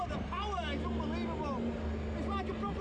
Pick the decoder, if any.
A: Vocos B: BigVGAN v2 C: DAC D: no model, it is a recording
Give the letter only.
D